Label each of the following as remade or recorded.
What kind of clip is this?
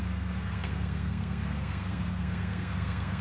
remade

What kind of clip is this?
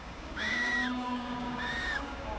remade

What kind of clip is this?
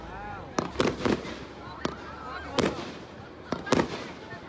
recorded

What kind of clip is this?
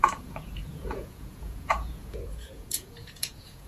remade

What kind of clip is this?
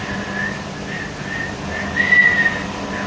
recorded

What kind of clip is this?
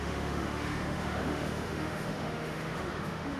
remade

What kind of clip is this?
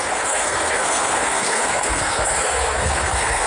remade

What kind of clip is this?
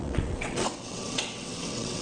remade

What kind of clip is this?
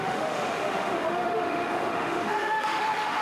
remade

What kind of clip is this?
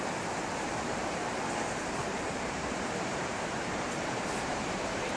remade